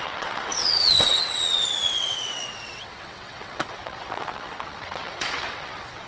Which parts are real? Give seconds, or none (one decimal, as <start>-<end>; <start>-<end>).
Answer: none